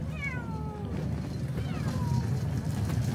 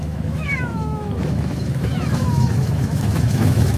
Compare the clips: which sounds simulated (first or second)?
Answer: second